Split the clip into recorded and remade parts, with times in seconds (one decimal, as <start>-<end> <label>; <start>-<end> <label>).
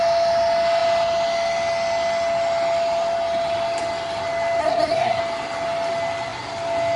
0.0-4.6 recorded; 4.6-5.2 remade; 5.2-7.0 recorded